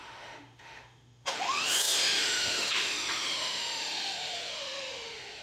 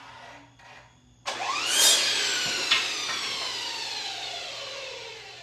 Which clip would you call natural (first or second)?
second